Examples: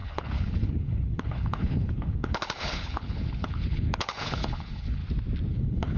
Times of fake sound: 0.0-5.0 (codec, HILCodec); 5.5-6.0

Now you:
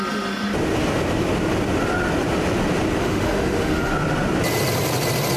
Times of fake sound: 3.0-3.9 (autoencoder, DAC-VAE)

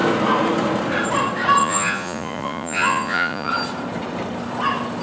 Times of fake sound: 1.6-3.5 (vocoder, Vocos)

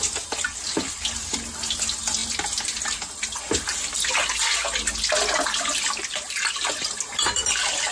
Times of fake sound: none

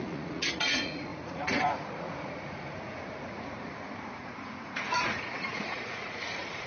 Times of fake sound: 0.0-6.7 (vocoder, Vocos)

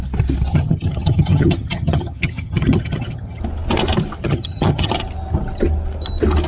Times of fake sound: 0.5-3.4 (vocoder, HiFi-GAN); 4.2-4.9

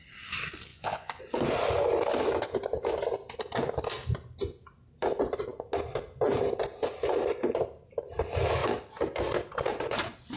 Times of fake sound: 0.7-1.2 (vocoder, Vocos)